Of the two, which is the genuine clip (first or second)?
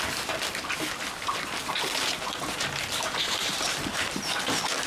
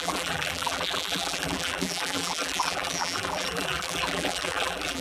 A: first